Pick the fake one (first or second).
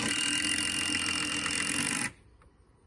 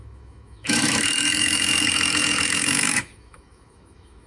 second